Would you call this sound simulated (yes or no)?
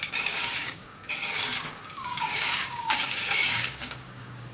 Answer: yes